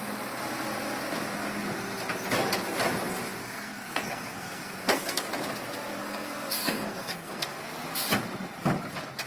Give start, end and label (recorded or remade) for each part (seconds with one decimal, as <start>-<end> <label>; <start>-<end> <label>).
0.0-3.4 recorded; 3.4-5.3 remade; 5.3-6.0 recorded; 6.0-7.6 remade; 7.6-9.3 recorded